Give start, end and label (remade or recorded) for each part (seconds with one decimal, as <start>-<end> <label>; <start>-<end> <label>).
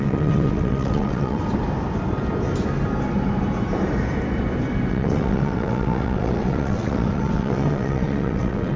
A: 0.0-1.4 remade; 1.4-4.9 recorded; 4.9-8.8 remade